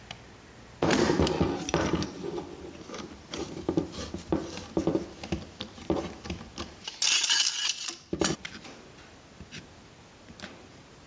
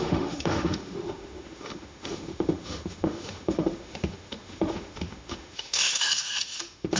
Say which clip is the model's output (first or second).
second